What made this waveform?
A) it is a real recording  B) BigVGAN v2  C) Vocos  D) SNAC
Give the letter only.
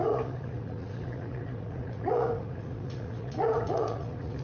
C